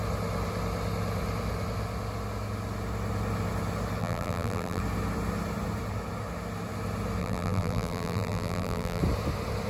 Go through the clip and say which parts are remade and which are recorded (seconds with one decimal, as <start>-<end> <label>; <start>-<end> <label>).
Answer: 0.0-4.0 recorded; 4.0-4.8 remade; 4.8-7.2 recorded; 7.2-9.0 remade; 9.0-9.7 recorded